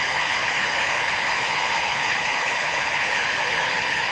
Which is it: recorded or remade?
remade